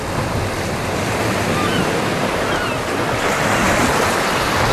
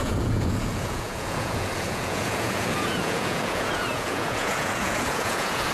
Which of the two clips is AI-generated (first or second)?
second